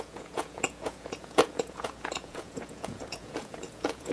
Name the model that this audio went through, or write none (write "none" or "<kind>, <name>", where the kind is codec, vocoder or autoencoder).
vocoder, Vocos